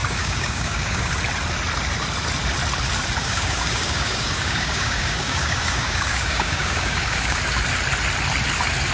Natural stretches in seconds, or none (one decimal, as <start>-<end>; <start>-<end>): 1.1-3.2; 7.4-8.9